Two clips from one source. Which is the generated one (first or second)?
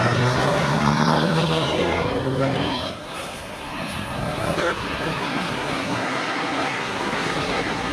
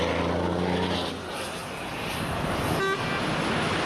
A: first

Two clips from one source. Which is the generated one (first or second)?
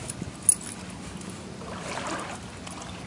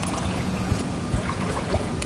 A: second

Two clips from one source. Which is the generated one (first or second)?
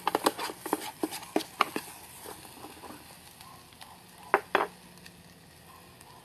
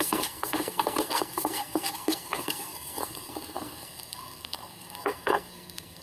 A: second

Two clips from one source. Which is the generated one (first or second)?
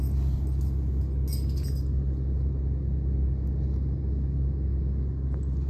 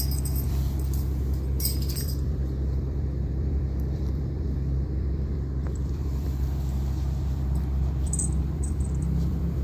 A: second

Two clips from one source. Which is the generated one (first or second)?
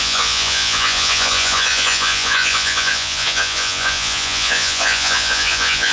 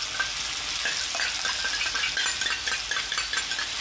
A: first